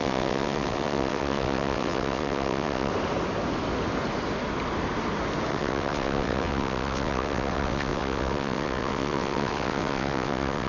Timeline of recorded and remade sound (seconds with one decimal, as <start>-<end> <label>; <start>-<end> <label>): 0.0-2.9 remade; 2.9-5.5 recorded; 5.5-10.7 remade